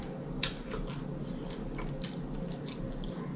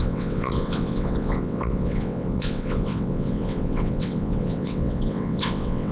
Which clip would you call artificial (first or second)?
second